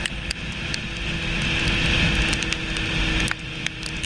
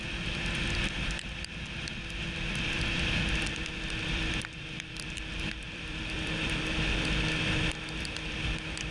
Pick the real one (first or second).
first